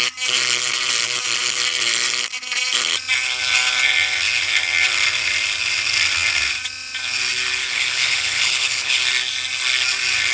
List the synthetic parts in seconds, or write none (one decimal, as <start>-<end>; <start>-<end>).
7.6-9.0